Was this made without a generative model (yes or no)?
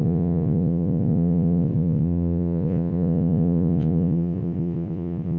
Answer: no